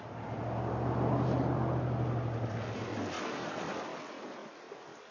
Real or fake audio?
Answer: real